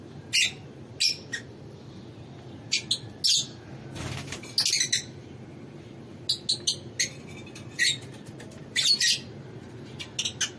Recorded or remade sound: recorded